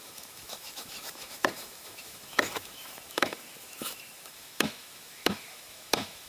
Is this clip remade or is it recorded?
remade